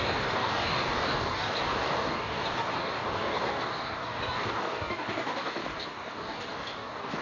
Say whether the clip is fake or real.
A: fake